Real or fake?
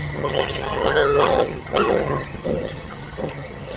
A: fake